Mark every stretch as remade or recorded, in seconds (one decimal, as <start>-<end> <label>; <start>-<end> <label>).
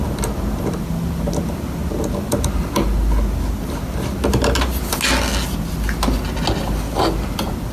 0.0-7.7 recorded